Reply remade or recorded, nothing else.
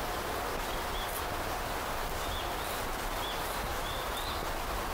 recorded